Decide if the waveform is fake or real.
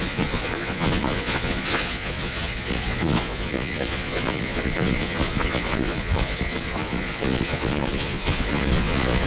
fake